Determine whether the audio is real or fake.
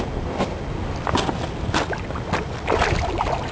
real